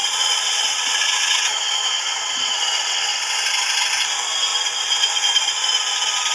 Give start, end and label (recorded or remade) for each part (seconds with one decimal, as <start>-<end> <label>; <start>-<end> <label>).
0.0-3.2 remade; 3.2-6.3 recorded